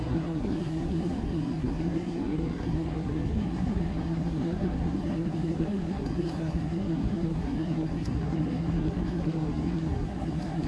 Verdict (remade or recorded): remade